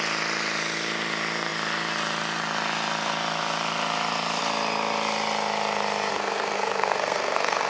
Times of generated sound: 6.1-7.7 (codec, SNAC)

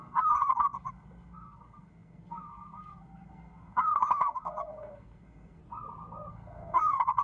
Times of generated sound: 0.0-5.6 (codec, SNAC); 6.3-7.2

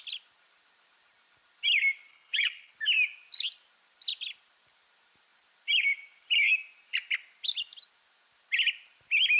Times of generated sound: 2.1-2.7 (codec, HILCodec)

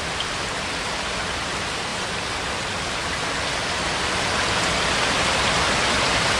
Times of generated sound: none